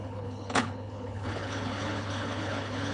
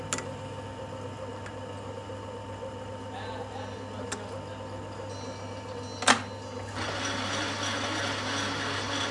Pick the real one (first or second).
second